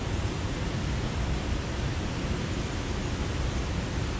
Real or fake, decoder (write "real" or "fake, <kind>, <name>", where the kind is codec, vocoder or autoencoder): fake, vocoder, BigVGAN v2